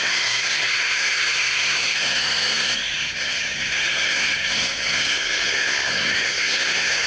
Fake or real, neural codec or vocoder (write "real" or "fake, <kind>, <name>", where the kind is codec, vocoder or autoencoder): fake, codec, SNAC